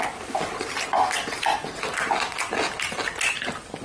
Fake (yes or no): no